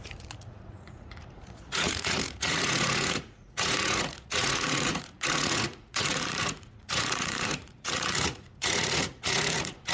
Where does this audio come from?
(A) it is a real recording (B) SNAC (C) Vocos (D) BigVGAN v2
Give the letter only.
C